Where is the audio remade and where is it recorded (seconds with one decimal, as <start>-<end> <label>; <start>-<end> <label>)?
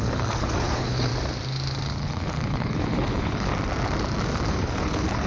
0.0-1.1 remade; 1.1-2.0 recorded; 2.0-3.5 remade; 3.5-4.5 recorded; 4.5-5.3 remade